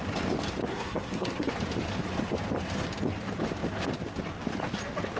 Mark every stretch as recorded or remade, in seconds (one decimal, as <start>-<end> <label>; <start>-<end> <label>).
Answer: 0.0-0.7 recorded; 0.7-1.5 remade; 1.5-5.2 recorded